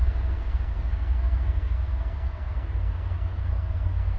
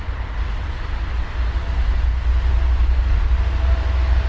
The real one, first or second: second